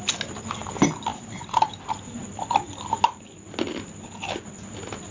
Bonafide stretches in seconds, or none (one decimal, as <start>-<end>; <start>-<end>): 0.0-1.1; 1.8-5.1